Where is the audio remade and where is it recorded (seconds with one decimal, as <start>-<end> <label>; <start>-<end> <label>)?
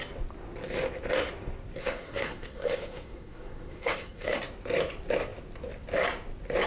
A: 0.0-1.8 recorded; 1.8-4.4 remade; 4.4-6.7 recorded